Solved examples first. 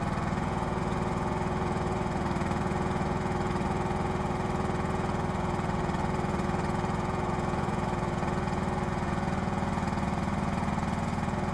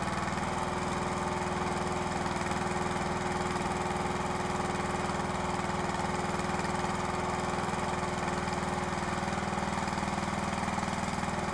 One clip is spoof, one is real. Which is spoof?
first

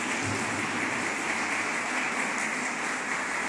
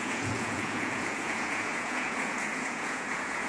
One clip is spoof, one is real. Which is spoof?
second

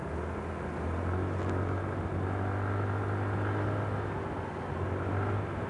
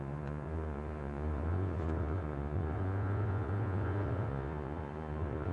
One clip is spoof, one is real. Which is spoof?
second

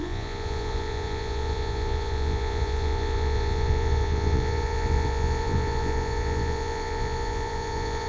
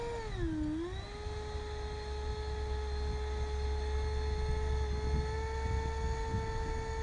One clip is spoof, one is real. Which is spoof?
first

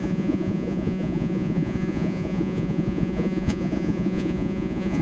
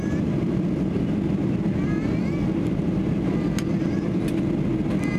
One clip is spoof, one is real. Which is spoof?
first